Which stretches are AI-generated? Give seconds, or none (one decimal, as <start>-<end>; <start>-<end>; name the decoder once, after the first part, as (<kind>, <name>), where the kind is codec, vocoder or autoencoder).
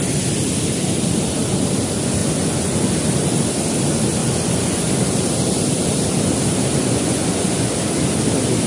2.2-2.9 (vocoder, Vocos); 4.2-4.9; 6.8-7.7